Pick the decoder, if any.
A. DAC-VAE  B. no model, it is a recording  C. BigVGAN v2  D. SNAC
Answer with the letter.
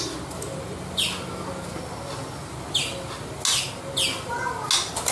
B